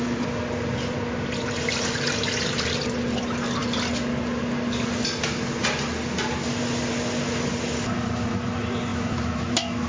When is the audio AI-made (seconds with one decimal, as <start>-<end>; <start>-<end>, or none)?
8.9-9.9